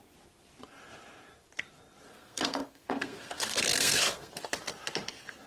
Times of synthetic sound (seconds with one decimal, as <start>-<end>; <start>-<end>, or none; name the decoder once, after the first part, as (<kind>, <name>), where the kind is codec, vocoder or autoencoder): 2.1-4.3 (codec, SNAC)